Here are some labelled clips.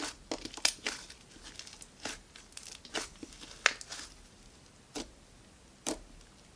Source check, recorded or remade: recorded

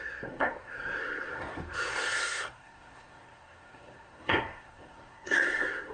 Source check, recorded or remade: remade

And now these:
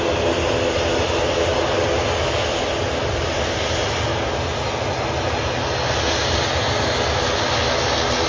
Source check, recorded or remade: recorded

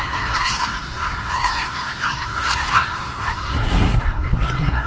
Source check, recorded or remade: remade